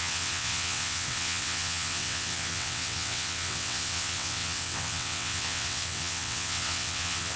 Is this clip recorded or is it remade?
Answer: remade